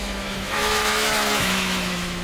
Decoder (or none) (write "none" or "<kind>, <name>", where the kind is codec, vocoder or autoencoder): autoencoder, DAC-VAE